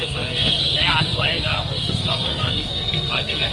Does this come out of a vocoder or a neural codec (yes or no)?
yes